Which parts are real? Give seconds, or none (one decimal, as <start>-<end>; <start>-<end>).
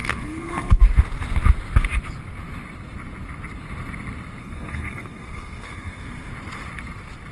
0.8-4.4; 6.3-7.3